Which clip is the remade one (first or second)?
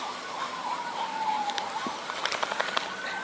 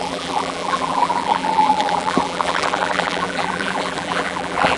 second